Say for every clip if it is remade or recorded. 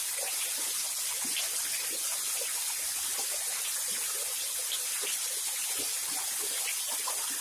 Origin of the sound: recorded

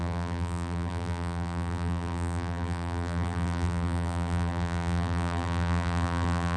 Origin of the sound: remade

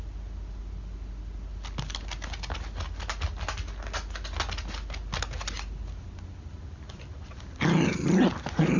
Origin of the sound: recorded